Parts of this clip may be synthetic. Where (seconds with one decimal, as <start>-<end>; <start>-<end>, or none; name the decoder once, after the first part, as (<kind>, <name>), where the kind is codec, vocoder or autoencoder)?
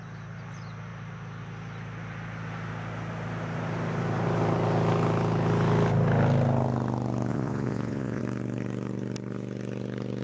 7.3-8.2 (vocoder, Vocos)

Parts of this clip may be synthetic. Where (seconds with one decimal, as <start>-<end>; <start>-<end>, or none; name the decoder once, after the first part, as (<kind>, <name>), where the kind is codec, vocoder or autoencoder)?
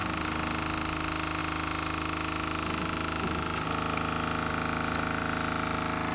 none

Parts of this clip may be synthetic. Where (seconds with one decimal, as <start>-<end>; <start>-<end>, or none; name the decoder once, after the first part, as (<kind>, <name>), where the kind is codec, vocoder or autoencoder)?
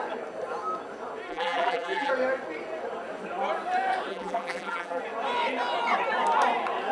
1.3-2.1 (vocoder, BigVGAN v2); 4.1-5.0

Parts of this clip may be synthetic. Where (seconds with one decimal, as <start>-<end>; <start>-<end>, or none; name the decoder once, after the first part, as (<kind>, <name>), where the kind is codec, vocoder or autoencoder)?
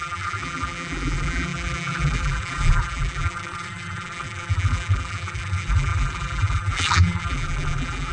0.0-8.1 (vocoder, BigVGAN v2)